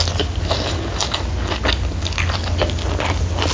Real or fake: real